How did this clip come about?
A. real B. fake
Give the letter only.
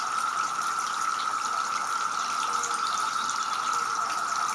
A